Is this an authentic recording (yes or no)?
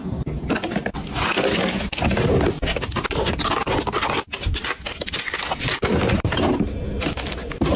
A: yes